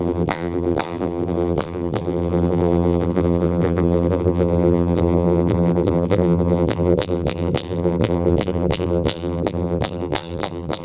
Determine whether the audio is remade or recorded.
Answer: remade